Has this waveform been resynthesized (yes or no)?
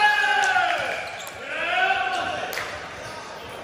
no